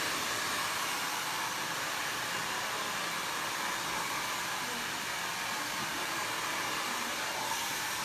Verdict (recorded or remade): remade